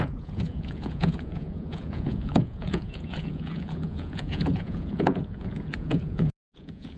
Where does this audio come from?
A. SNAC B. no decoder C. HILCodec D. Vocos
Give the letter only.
D